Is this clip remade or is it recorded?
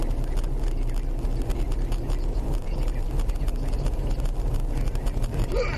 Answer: recorded